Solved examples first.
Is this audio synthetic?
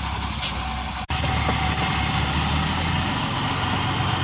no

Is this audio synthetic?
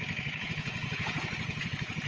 yes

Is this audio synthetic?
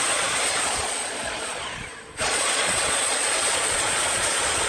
yes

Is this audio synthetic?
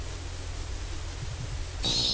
no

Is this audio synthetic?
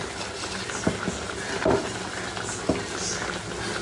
no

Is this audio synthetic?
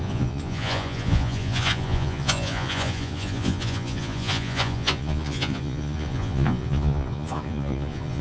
yes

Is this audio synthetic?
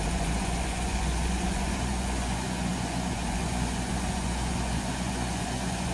yes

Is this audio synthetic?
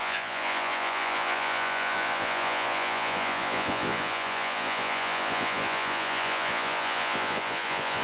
yes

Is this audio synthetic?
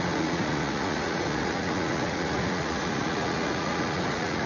yes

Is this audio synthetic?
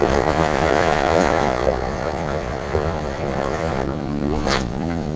yes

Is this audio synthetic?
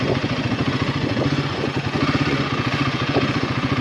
yes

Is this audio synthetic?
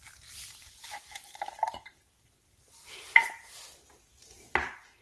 no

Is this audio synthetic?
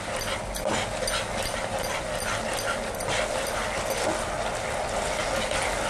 no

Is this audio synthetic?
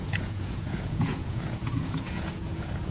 yes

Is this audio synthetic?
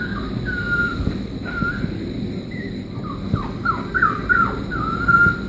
no